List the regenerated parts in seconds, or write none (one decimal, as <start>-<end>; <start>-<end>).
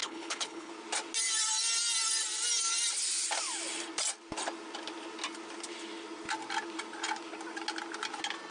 0.0-0.7